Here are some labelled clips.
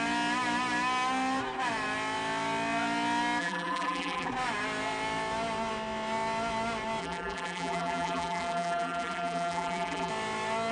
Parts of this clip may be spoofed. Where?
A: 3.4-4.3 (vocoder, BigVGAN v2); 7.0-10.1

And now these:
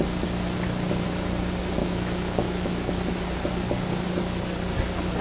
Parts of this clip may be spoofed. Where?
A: 1.8-2.9 (autoencoder, DAC-VAE)

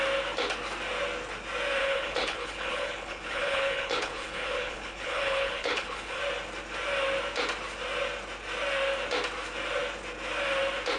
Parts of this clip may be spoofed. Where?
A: 1.8-6.2 (codec, HILCodec)